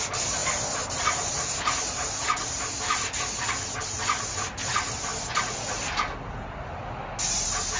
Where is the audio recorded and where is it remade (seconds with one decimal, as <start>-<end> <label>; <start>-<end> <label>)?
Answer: 0.0-7.8 recorded